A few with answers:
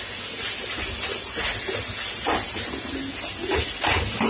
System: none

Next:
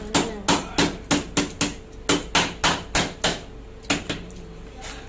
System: none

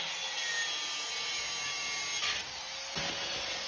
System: none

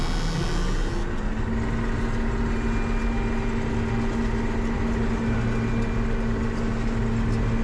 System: none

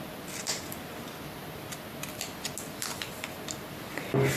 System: none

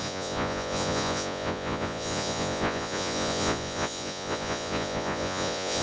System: vocoder, Vocos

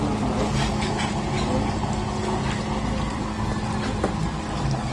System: none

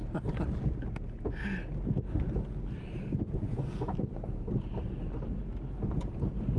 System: none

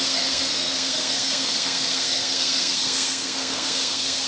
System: codec, SNAC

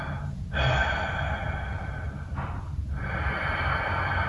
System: none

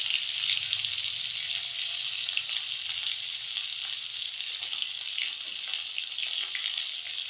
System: none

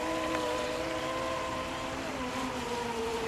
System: none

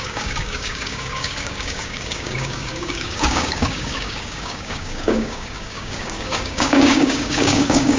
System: codec, DAC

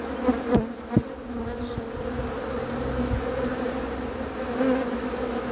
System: none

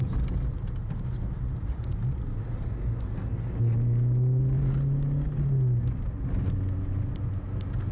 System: none